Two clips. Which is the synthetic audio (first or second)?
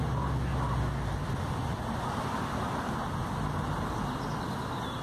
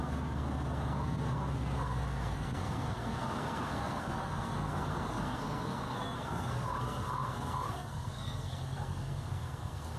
second